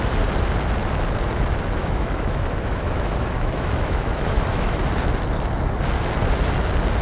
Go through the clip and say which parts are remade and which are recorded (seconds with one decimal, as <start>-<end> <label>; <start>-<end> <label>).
0.0-1.8 recorded; 1.8-4.8 remade; 4.8-7.0 recorded